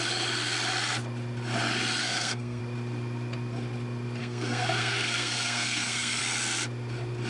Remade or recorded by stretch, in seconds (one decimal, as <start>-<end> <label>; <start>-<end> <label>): 0.0-2.0 recorded; 2.0-2.6 remade; 2.6-4.2 recorded; 4.2-6.2 remade; 6.2-7.3 recorded